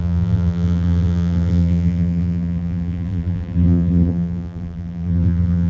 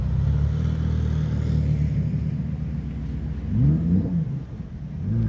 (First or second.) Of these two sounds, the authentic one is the second